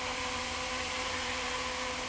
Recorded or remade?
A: remade